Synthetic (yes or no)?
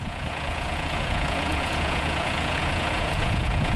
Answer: yes